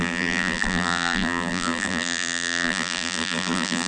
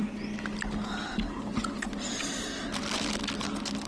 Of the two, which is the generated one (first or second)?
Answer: first